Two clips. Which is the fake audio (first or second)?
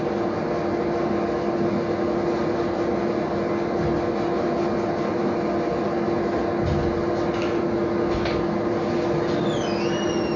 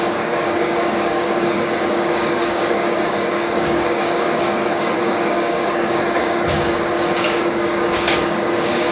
second